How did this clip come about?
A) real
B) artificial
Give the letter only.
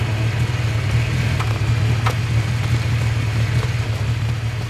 A